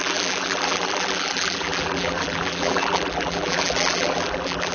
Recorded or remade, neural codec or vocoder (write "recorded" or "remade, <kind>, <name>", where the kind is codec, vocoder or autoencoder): remade, vocoder, BigVGAN v2